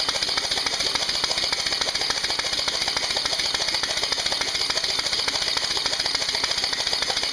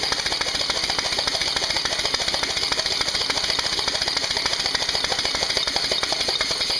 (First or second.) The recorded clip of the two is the first